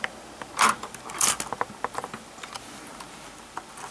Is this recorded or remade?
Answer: recorded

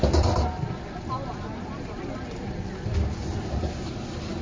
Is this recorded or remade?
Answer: remade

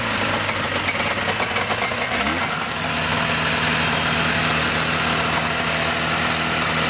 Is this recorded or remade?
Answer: recorded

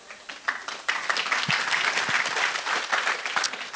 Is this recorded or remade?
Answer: recorded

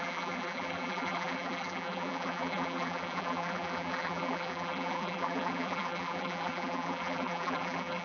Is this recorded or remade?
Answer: remade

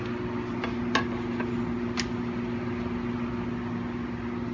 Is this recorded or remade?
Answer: recorded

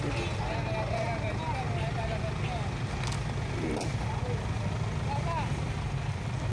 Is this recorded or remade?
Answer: recorded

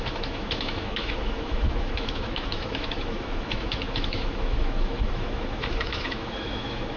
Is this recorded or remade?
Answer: remade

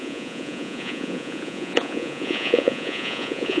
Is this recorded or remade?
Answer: remade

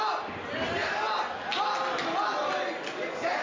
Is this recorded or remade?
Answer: recorded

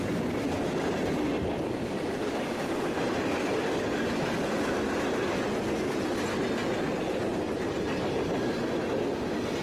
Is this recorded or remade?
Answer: recorded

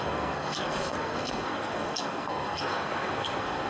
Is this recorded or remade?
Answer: remade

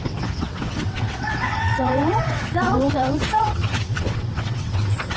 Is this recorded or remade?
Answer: remade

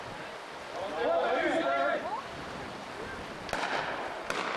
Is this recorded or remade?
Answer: recorded